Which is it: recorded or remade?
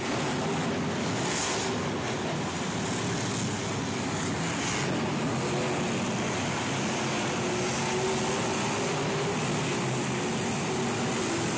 recorded